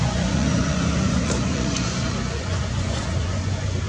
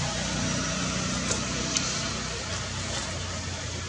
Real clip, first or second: second